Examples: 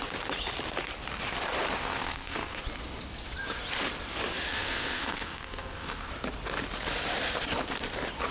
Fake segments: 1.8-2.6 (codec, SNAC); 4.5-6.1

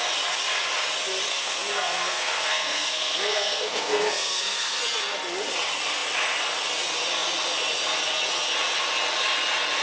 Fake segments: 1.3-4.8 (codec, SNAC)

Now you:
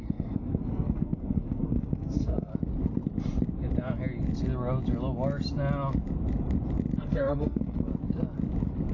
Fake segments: 0.0-2.5 (codec, SNAC); 7.0-7.9